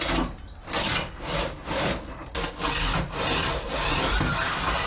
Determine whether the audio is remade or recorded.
recorded